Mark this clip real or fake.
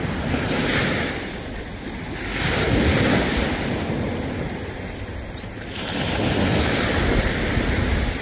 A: real